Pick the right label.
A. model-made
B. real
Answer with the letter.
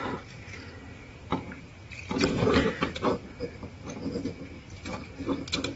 B